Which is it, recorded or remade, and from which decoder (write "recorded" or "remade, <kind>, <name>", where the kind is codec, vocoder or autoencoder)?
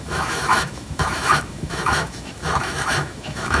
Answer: remade, autoencoder, DAC-VAE